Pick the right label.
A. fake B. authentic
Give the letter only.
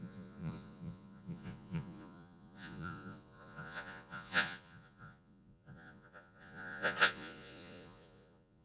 A